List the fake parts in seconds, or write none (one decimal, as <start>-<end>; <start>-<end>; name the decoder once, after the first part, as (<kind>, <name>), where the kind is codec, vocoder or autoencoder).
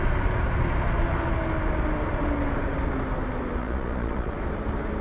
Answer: 3.6-4.3 (vocoder, Vocos)